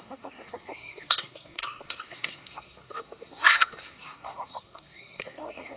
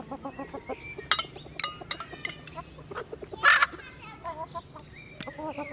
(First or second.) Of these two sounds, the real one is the second